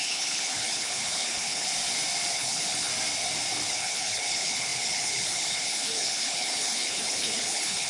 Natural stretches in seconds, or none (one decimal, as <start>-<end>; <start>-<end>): 1.7-2.3; 2.9-3.7